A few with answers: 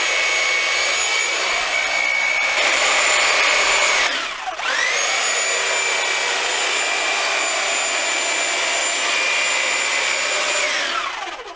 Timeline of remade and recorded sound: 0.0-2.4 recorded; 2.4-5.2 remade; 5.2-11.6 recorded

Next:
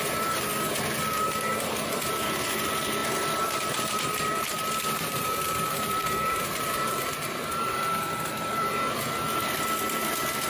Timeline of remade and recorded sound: 0.0-10.5 remade

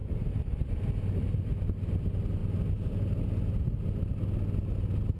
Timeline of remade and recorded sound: 0.0-0.7 remade; 0.7-5.2 recorded

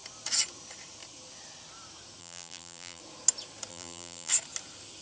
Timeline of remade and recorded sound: 0.0-2.2 recorded; 2.2-3.0 remade; 3.0-3.7 recorded; 3.7-4.3 remade; 4.3-5.0 recorded

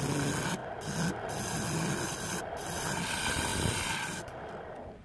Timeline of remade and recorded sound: 0.0-5.0 recorded

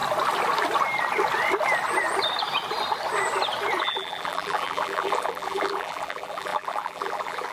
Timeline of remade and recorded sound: 0.0-3.8 recorded; 3.8-7.5 remade

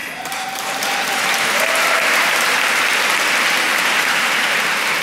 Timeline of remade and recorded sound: 0.0-2.8 remade; 2.8-3.7 recorded; 3.7-5.0 remade